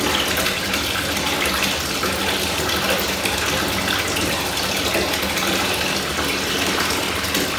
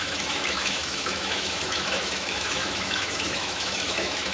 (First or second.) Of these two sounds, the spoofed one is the second